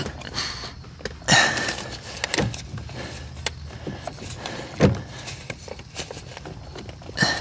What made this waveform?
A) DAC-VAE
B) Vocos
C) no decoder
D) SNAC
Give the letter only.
C